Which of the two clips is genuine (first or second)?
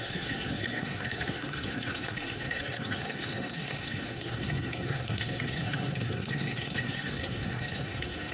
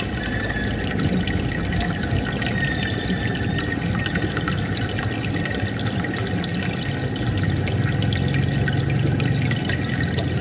second